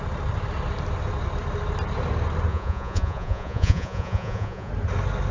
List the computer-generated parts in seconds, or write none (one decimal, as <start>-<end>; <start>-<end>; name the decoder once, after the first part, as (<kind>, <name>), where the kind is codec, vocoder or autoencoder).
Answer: 2.5-4.7 (vocoder, Vocos)